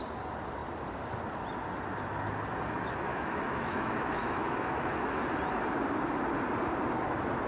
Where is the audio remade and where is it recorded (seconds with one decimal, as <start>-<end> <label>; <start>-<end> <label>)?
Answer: 0.0-3.1 recorded; 3.1-5.1 remade; 5.1-7.5 recorded